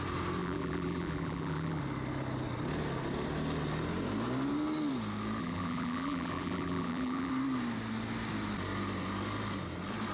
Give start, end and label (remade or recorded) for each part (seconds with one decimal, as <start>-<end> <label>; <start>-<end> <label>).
0.0-0.4 recorded; 0.4-1.8 remade; 1.8-5.4 recorded; 5.4-7.3 remade; 7.3-10.1 recorded